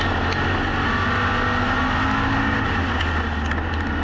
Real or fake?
real